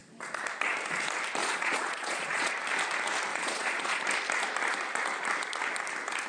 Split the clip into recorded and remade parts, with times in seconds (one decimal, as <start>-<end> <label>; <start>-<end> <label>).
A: 0.0-1.4 recorded; 1.4-2.5 remade; 2.5-3.3 recorded; 3.3-4.0 remade; 4.0-6.3 recorded